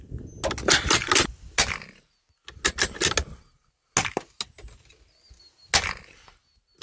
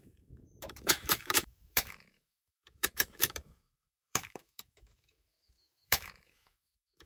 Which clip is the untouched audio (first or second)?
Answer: first